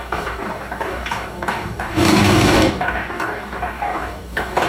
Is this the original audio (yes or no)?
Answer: no